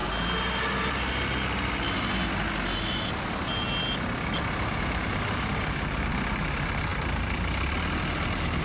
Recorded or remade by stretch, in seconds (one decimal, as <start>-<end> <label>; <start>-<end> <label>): 0.0-4.8 recorded; 4.8-8.6 remade